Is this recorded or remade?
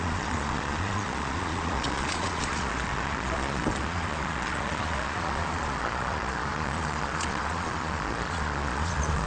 remade